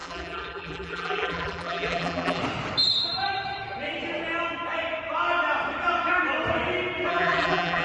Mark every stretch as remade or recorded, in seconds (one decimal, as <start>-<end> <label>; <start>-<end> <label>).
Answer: 0.0-2.4 remade; 2.4-7.1 recorded; 7.1-7.8 remade